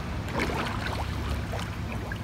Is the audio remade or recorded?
recorded